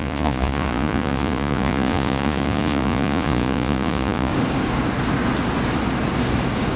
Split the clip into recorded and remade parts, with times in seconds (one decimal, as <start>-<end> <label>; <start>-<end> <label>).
0.0-4.3 remade; 4.3-6.8 recorded